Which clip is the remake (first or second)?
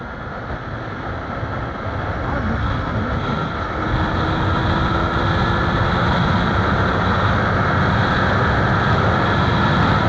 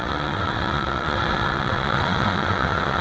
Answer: second